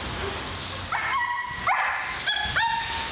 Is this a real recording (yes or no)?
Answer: yes